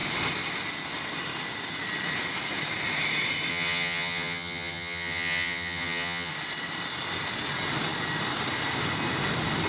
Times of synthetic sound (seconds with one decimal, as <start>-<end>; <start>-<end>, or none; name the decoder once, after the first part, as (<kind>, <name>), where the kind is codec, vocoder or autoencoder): 3.5-6.3 (vocoder, HiFi-GAN)